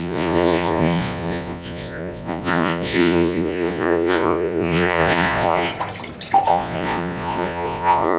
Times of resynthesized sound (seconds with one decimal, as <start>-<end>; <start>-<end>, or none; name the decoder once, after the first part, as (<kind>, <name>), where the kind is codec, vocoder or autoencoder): 0.0-5.7 (vocoder, Vocos); 6.5-8.2